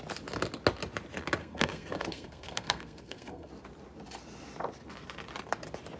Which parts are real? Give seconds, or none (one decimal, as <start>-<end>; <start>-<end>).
0.0-1.4; 3.5-6.0